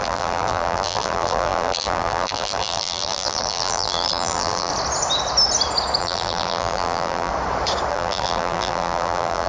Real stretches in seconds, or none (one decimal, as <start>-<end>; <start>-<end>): 4.7-6.0; 7.3-7.9